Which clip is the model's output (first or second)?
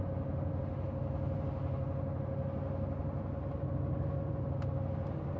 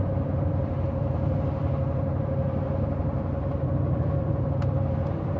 second